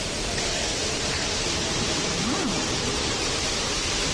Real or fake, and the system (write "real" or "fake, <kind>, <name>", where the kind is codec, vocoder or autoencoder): fake, vocoder, BigVGAN v2